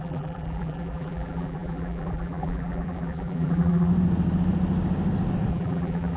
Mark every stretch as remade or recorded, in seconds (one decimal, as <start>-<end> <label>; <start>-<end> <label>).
0.0-3.9 remade; 3.9-5.5 recorded; 5.5-6.2 remade